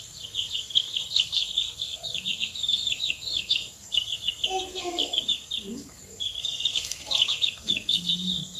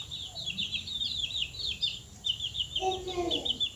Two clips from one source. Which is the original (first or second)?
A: second